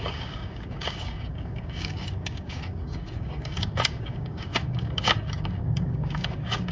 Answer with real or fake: fake